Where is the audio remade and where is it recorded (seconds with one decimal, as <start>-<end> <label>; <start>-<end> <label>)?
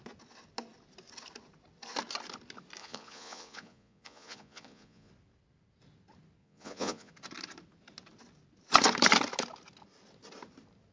0.0-2.8 recorded; 2.8-5.1 remade; 5.1-6.4 recorded; 6.4-7.1 remade; 7.1-10.9 recorded